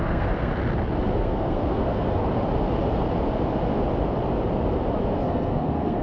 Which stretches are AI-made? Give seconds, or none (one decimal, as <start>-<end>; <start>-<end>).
0.0-0.5; 1.1-2.2; 5.0-6.0